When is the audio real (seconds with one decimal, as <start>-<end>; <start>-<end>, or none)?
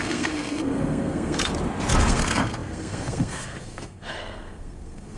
1.5-2.0